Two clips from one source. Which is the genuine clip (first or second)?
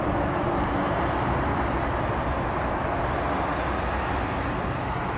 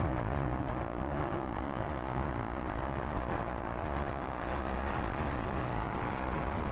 first